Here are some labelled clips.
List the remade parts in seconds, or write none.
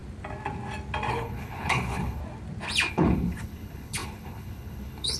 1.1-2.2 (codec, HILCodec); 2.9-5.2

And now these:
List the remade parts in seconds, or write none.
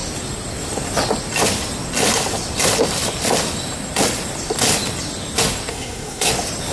5.7-6.3 (codec, SNAC)